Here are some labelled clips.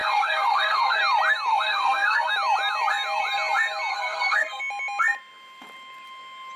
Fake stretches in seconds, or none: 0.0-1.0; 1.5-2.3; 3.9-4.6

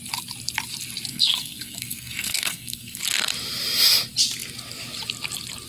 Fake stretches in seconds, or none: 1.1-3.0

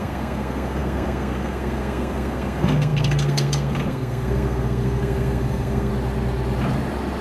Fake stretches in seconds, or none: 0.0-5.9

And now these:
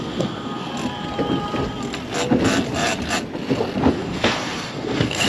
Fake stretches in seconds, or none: 0.0-0.7; 3.9-5.3